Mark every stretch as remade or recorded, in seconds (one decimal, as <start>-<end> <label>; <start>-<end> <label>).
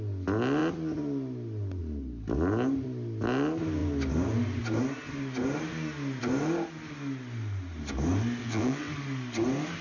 0.0-8.4 recorded; 8.4-8.9 remade; 8.9-9.8 recorded